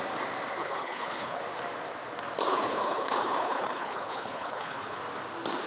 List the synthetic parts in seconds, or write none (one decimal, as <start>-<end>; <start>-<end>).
0.6-1.4; 2.5-5.0